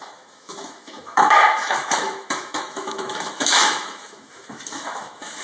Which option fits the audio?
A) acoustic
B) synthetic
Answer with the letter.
B